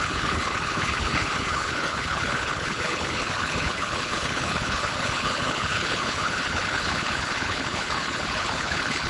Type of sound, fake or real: fake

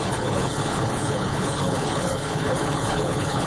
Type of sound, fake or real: fake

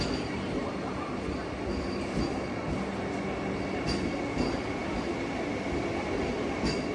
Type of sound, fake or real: real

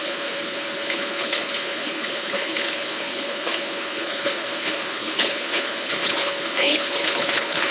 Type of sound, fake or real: fake